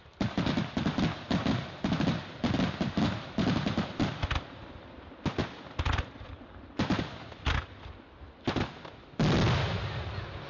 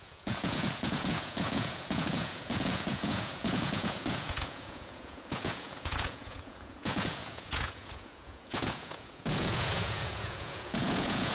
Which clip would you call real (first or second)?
first